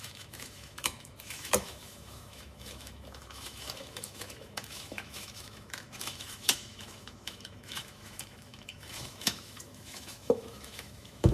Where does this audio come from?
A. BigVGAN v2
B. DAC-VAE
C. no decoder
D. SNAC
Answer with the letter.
B